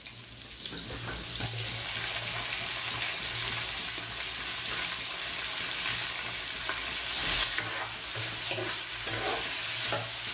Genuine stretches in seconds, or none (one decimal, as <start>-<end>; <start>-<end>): 0.0-10.3